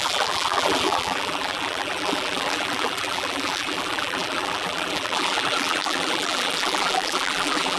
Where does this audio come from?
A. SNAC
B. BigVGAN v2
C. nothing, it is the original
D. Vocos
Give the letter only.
B